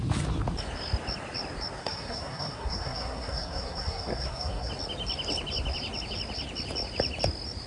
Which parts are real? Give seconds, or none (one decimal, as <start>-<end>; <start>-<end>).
0.0-1.8; 4.7-7.7

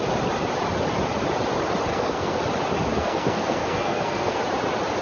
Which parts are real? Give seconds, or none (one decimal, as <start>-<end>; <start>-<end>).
0.0-1.9; 2.4-2.9; 4.4-5.0